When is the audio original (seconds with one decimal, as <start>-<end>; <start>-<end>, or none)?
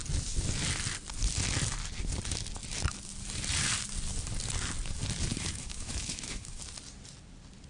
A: 0.0-5.3; 6.6-7.7